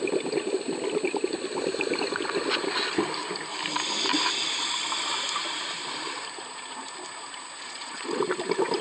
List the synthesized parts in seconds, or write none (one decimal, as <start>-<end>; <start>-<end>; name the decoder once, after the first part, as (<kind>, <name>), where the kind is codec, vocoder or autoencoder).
7.6-8.2 (vocoder, Vocos)